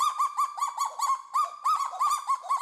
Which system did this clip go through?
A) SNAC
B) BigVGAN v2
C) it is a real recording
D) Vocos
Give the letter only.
C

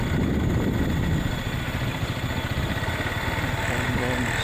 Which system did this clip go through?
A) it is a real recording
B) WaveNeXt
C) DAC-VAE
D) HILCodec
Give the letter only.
A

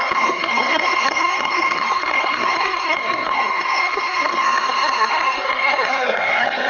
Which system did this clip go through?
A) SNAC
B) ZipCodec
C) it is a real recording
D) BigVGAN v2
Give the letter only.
A